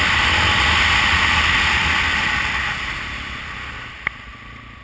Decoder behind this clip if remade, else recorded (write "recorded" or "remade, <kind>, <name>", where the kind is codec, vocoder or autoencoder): recorded